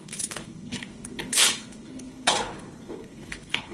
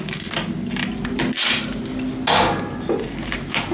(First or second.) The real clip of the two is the second